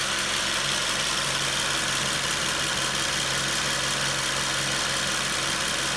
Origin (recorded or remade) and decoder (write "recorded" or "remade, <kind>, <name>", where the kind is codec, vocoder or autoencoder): recorded